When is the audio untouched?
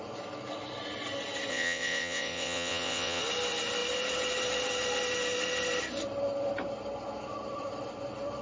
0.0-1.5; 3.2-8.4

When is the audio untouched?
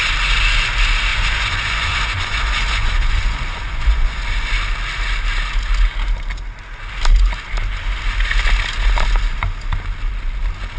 0.0-1.1; 4.2-10.8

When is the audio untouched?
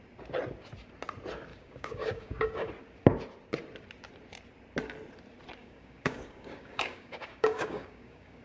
0.0-1.5; 2.7-5.6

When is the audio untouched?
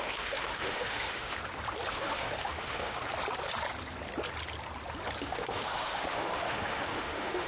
1.4-1.9; 3.0-5.2